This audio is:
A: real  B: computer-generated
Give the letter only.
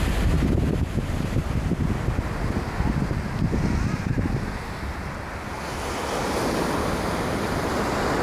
A